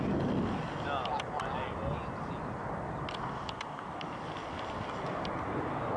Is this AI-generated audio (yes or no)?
no